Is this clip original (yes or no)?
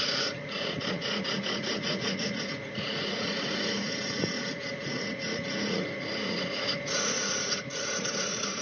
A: no